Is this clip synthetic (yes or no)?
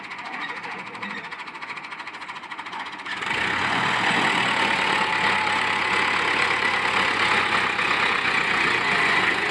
yes